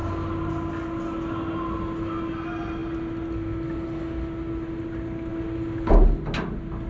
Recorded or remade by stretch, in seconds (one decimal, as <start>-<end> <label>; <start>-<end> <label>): 0.0-6.9 recorded